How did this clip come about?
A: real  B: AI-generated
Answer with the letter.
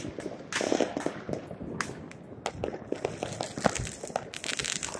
A